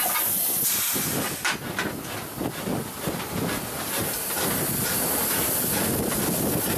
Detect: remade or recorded recorded